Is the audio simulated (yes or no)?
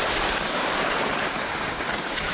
yes